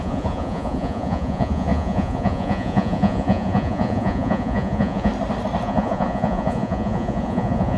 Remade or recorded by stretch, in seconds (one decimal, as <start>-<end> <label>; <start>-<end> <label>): 0.0-5.1 remade; 5.1-5.6 recorded; 5.6-7.8 remade